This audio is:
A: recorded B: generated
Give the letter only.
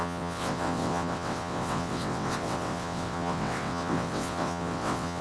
B